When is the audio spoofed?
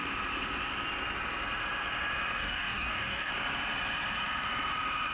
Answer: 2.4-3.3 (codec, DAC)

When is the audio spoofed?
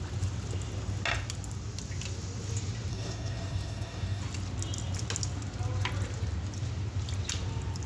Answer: 2.9-4.2 (codec, DAC)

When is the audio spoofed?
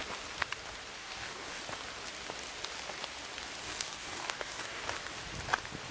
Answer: 1.0-1.6 (codec, DAC); 3.6-4.8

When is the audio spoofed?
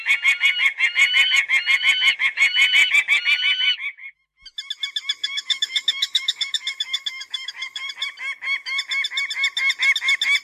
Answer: 5.2-7.9 (codec, DAC)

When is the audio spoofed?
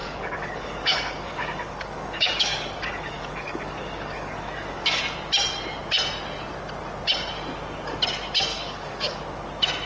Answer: 0.0-5.0 (codec, DAC); 8.5-9.2